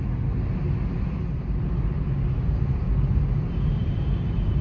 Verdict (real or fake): real